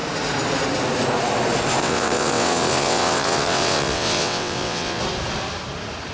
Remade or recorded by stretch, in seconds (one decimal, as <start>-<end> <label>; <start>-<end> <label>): 0.0-1.8 recorded; 1.8-5.0 remade; 5.0-6.1 recorded